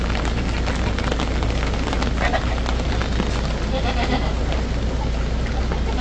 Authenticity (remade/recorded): recorded